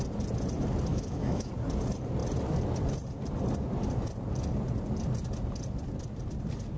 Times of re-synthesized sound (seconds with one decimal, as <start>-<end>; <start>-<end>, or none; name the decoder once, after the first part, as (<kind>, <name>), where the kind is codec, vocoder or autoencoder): 0.9-1.5 (autoencoder, DAC-VAE)